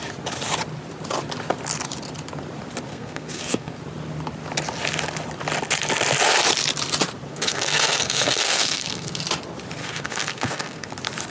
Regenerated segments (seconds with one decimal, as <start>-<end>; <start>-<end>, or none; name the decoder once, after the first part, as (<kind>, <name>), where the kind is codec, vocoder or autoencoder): 2.9-3.8 (codec, SNAC); 7.3-9.2; 9.8-10.9